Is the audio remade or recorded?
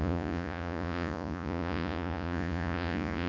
remade